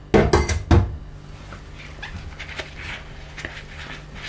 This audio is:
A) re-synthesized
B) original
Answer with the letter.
B